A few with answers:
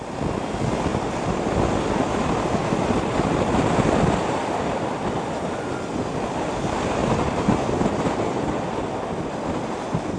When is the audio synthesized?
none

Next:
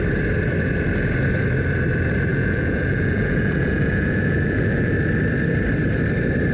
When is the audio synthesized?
2.3-4.9

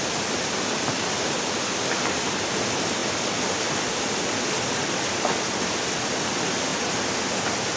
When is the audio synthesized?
none

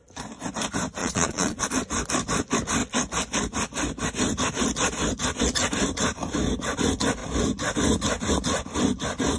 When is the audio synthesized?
1.0-1.6

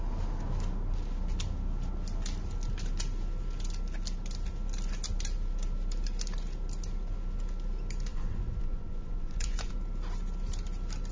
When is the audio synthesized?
8.1-9.7

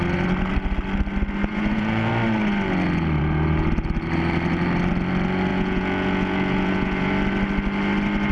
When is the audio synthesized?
1.5-2.1; 5.5-7.1

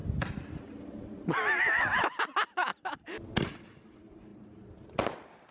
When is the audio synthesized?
none